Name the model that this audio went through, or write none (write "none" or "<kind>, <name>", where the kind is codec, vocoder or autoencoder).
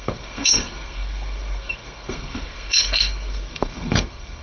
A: codec, SNAC